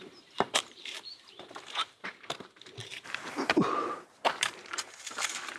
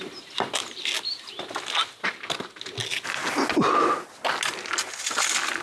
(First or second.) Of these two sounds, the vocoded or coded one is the first